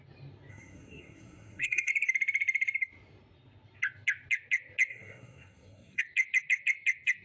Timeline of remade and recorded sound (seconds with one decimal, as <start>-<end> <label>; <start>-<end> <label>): 0.0-0.5 recorded; 0.5-1.9 remade; 1.9-4.9 recorded; 4.9-6.0 remade; 6.0-7.2 recorded